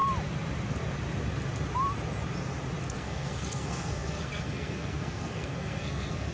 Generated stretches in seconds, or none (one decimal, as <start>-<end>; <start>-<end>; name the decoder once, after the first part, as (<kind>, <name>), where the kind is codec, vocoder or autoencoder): 2.8-6.3 (codec, SNAC)